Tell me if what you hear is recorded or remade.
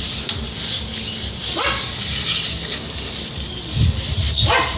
recorded